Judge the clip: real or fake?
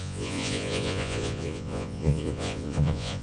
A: fake